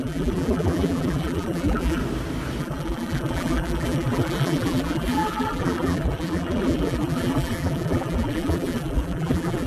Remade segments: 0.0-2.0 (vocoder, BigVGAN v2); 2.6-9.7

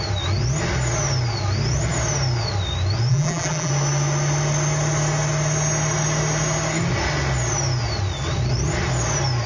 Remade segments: 3.1-3.7 (vocoder, BigVGAN v2)